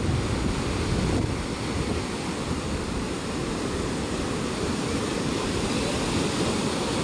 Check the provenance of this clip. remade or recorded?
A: recorded